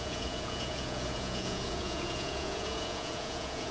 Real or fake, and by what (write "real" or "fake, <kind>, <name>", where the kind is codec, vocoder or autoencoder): fake, vocoder, Vocos